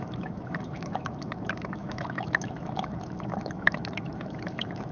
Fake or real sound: fake